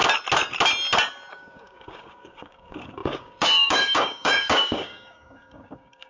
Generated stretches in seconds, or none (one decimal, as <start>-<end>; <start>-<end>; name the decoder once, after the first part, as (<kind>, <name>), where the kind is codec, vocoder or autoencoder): 1.3-6.1 (codec, DAC)